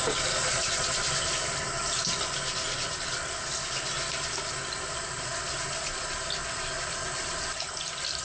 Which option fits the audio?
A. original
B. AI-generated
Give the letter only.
A